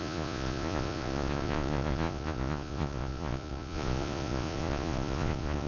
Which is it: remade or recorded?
remade